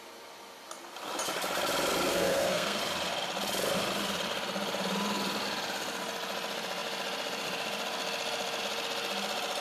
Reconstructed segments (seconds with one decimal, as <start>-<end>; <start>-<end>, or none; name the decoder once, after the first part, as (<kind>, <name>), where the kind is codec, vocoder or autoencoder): 2.1-2.8 (codec, SNAC)